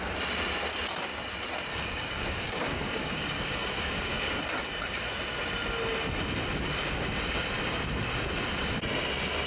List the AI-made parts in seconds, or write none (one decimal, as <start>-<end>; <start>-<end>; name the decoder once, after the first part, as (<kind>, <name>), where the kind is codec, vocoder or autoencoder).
1.7-4.4 (codec, DAC); 6.5-7.1